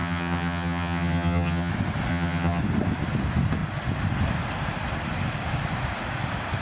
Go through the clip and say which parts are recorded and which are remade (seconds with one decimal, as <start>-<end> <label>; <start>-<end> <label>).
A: 0.0-1.7 remade; 1.7-2.1 recorded; 2.1-2.6 remade; 2.6-6.6 recorded